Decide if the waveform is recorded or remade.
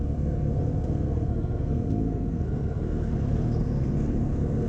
remade